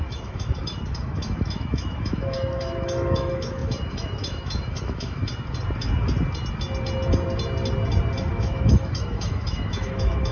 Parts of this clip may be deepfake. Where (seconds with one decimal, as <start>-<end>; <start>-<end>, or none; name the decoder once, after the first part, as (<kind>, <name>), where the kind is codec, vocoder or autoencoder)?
0.0-5.2 (autoencoder, DAC-VAE); 8.3-10.3